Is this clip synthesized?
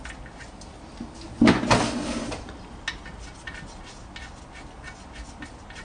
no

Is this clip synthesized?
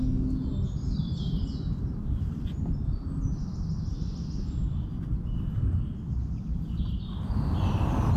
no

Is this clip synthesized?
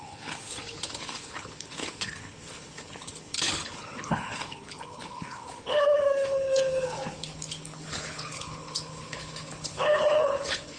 yes